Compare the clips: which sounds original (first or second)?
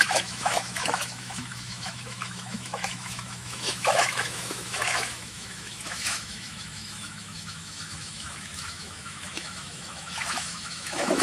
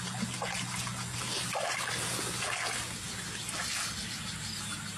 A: second